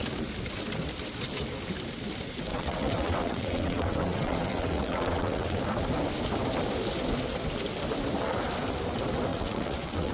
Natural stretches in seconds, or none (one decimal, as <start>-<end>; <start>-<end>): 0.0-2.5; 5.6-9.3